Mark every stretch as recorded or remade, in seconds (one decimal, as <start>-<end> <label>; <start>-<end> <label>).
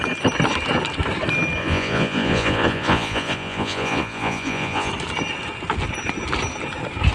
0.0-1.6 recorded; 1.6-4.9 remade; 4.9-7.1 recorded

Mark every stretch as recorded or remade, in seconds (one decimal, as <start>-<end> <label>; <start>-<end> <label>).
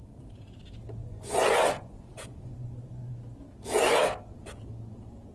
0.0-1.0 recorded; 1.0-3.1 remade; 3.1-5.3 recorded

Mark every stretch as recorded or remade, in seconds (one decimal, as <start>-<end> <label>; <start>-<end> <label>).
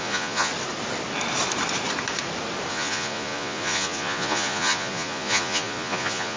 0.0-0.5 remade; 0.5-2.7 recorded; 2.7-6.4 remade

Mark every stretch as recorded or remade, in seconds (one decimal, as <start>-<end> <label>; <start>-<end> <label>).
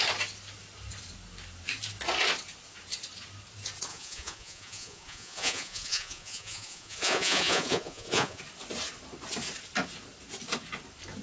0.0-3.9 recorded; 3.9-8.4 remade; 8.4-11.2 recorded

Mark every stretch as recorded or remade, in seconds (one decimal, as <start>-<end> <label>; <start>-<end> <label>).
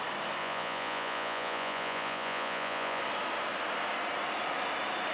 0.0-0.4 recorded; 0.4-3.0 remade; 3.0-5.1 recorded